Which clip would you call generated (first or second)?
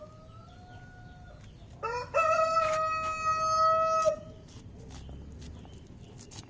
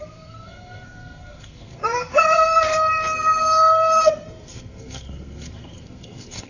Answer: second